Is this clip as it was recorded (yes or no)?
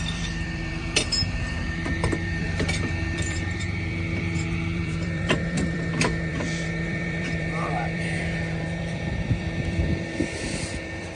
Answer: no